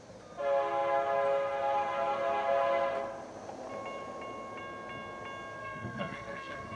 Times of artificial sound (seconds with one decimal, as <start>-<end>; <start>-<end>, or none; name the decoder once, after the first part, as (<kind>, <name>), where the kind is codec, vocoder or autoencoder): 5.6-6.8 (codec, SNAC)